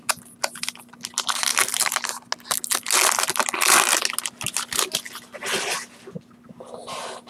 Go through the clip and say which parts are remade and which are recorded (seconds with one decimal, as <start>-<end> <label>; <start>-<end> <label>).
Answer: 0.0-7.3 recorded